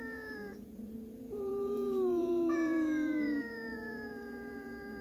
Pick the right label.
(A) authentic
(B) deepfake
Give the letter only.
B